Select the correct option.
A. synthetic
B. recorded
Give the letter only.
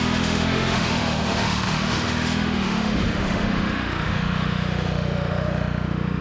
A